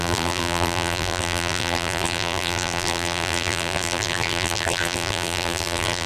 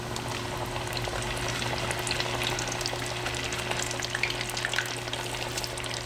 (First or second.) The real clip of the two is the second